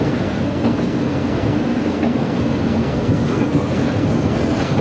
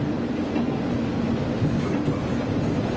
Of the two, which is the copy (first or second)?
first